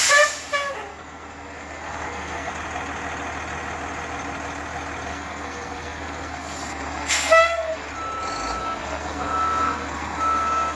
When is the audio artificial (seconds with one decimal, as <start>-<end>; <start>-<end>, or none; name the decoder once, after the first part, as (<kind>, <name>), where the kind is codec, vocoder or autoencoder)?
0.9-2.5 (codec, SNAC); 5.1-7.9; 8.6-10.8